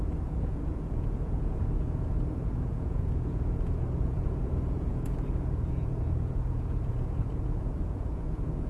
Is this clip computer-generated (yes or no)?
yes